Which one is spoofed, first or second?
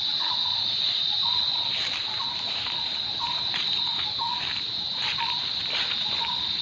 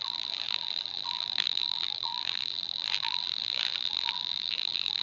second